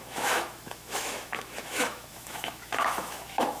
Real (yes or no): no